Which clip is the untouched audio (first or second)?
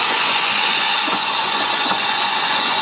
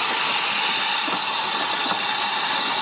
second